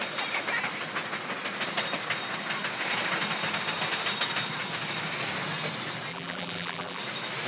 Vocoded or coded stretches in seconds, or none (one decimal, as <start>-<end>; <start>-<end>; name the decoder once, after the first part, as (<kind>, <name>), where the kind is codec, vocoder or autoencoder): 6.1-7.0 (vocoder, BigVGAN v2)